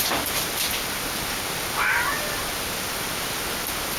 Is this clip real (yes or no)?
yes